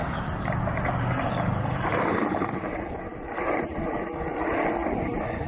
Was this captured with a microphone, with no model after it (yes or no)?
no